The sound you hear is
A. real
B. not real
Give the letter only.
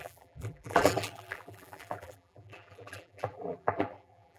B